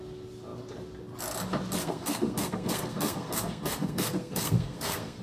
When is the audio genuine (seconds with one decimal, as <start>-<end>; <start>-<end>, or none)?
0.0-1.8